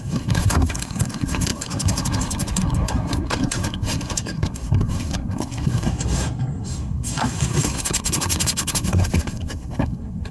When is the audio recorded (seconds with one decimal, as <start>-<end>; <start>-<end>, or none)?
none